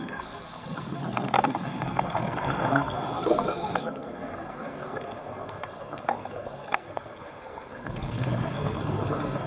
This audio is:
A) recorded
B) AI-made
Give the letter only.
B